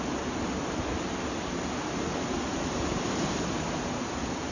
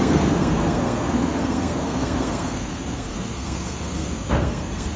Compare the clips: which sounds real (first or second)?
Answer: first